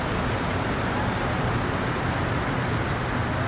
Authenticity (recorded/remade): recorded